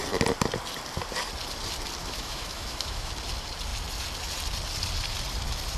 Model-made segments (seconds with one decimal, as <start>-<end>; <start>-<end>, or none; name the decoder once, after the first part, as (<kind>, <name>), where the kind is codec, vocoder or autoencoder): 2.0-3.1 (autoencoder, DAC-VAE)